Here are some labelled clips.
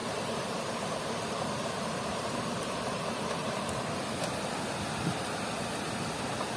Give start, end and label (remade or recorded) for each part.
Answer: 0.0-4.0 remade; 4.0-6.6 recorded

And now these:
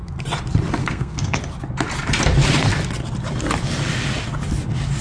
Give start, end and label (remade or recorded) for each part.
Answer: 0.0-0.8 recorded; 0.8-1.4 remade; 1.4-5.0 recorded

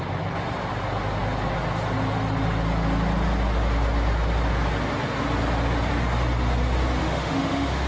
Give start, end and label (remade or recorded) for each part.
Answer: 0.0-7.0 recorded; 7.0-7.9 remade

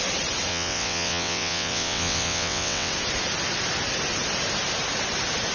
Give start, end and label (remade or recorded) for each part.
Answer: 0.0-0.5 recorded; 0.5-2.9 remade; 2.9-5.5 recorded

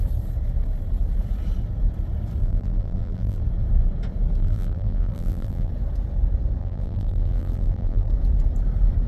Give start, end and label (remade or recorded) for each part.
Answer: 0.0-2.4 recorded; 2.4-3.4 remade; 3.4-4.4 recorded; 4.4-5.7 remade; 5.7-6.6 recorded; 6.6-8.1 remade; 8.1-9.1 recorded

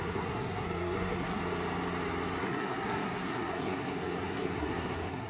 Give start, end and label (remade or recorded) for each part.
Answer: 0.0-1.4 remade; 1.4-2.4 recorded; 2.4-5.3 remade

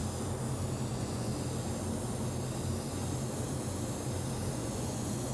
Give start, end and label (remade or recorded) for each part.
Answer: 0.0-0.9 recorded; 0.9-1.3 remade; 1.3-4.5 recorded; 4.5-5.3 remade

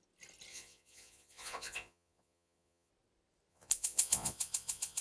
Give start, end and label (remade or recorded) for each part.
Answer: 0.0-0.5 recorded; 0.5-2.9 remade; 2.9-3.5 recorded; 3.5-5.0 remade